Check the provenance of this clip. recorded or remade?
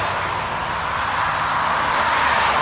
recorded